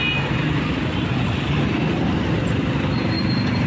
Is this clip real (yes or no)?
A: yes